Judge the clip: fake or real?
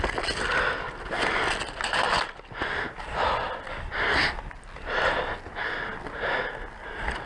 real